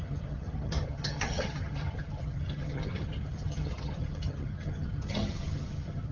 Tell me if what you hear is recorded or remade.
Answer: remade